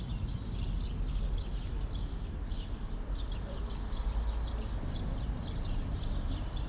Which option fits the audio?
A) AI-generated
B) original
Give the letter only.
B